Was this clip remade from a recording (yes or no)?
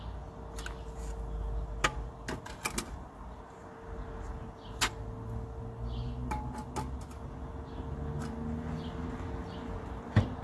no